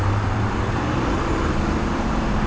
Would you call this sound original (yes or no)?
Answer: no